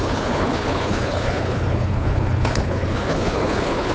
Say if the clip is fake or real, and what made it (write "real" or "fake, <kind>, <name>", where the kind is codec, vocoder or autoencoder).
fake, codec, HILCodec